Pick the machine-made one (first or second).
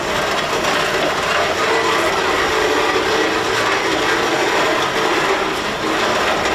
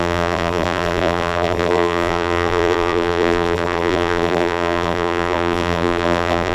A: second